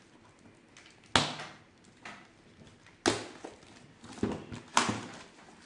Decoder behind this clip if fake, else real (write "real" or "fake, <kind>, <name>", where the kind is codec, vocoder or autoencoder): real